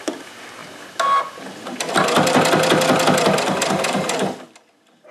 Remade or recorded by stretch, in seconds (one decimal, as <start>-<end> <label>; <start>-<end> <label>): 0.0-5.1 recorded